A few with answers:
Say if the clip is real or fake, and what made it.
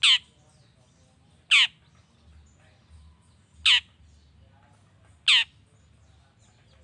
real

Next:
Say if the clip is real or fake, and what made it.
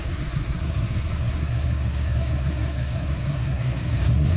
fake, codec, SNAC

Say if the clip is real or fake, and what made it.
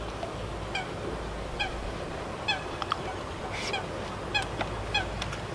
real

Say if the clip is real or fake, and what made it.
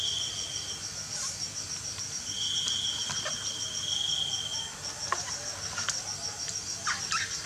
real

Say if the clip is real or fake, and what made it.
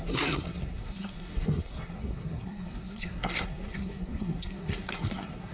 fake, codec, SNAC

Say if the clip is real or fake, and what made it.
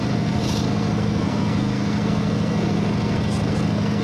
fake, codec, SNAC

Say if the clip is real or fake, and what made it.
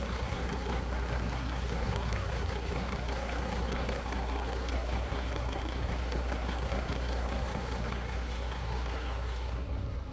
fake, codec, SNAC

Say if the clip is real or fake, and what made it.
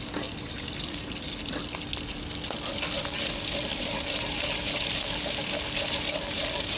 real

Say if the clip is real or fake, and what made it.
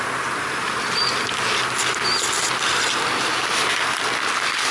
real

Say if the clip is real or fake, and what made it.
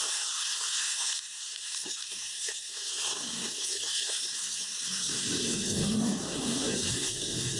fake, codec, SNAC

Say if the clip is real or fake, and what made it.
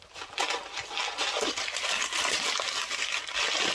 real